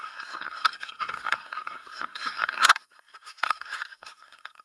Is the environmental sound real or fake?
fake